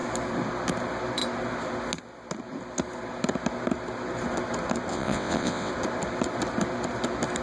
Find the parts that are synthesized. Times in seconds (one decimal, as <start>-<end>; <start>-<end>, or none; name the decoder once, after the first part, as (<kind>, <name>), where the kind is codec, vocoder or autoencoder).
4.9-5.7 (vocoder, WaveNeXt)

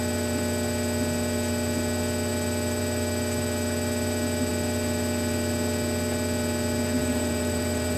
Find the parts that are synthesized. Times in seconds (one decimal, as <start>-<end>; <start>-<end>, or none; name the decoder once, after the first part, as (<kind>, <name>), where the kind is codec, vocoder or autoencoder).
7.0-8.0 (vocoder, BigVGAN v2)

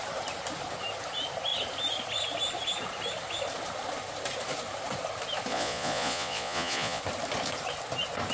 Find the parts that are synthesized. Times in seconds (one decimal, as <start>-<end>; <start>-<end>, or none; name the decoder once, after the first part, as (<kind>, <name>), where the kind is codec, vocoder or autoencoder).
5.5-7.0 (vocoder, Vocos)

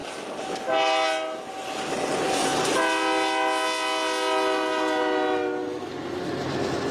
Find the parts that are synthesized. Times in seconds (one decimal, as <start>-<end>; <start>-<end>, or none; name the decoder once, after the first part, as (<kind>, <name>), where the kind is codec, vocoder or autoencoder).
none

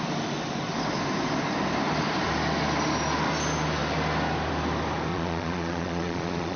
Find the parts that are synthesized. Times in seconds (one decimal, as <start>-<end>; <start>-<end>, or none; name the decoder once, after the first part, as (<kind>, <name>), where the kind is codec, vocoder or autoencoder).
5.1-6.6 (vocoder, Vocos)

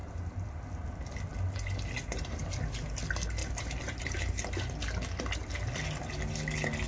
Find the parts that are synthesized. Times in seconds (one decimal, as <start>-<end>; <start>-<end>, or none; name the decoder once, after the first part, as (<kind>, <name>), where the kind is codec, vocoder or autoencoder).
0.0-0.6 (vocoder, BigVGAN v2); 3.4-4.3